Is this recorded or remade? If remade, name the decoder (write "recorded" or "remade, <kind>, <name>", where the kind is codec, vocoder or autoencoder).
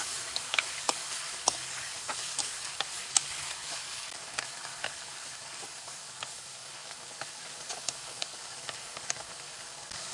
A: remade, codec, DAC